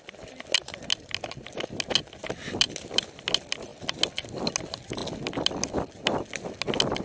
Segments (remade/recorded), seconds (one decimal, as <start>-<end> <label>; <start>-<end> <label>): 0.0-7.0 recorded